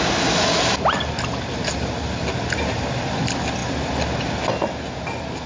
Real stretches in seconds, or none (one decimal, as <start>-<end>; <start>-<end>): 0.0-5.5